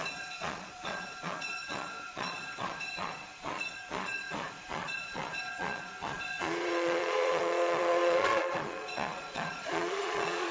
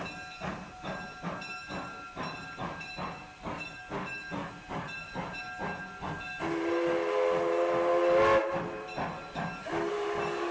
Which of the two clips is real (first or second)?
second